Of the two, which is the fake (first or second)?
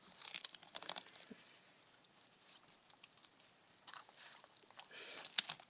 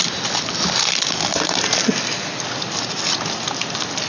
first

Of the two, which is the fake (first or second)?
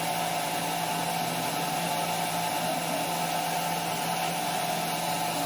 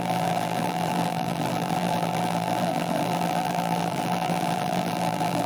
second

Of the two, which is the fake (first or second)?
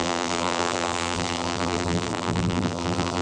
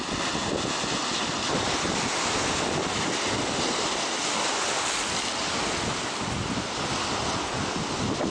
first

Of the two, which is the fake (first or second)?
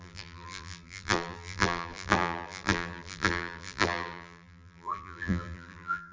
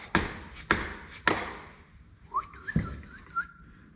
first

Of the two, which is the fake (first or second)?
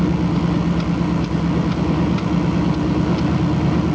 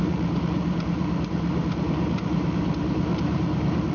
second